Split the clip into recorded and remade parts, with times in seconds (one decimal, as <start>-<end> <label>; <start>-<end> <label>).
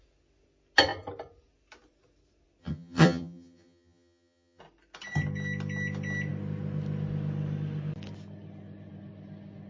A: 0.0-2.6 recorded; 2.6-4.6 remade; 4.6-9.7 recorded